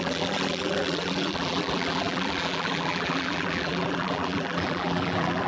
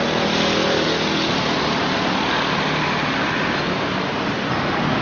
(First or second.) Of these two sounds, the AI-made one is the first